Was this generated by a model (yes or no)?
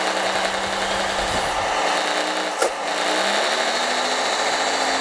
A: no